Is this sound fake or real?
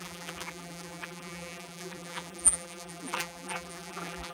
fake